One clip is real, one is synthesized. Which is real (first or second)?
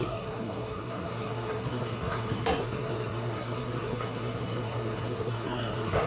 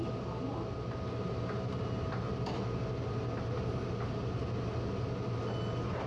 second